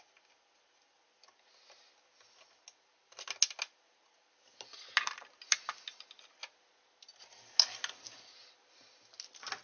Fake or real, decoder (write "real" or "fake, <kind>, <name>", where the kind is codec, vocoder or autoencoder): real